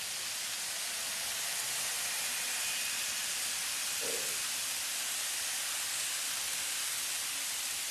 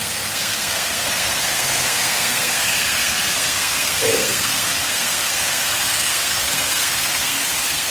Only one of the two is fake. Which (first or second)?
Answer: second